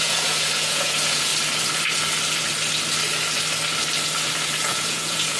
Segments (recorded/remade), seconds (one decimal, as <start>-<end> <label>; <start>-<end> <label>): 0.0-1.3 remade; 1.3-4.5 recorded; 4.5-5.4 remade